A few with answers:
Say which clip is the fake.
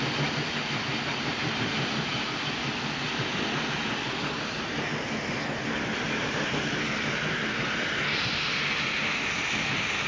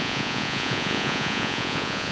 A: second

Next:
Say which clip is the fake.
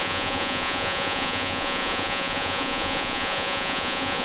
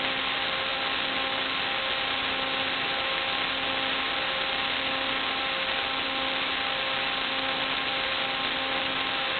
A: first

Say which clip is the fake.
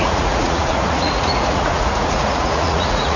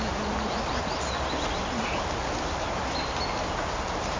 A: first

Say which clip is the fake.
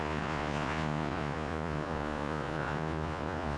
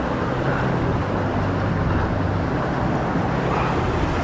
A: first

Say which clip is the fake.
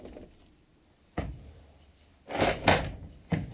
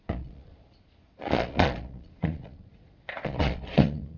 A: second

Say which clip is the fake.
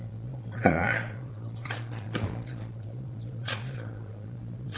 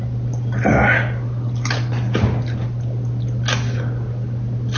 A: first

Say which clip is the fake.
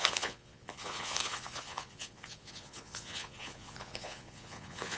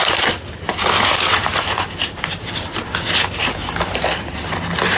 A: first